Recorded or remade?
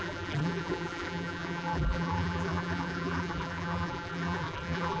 remade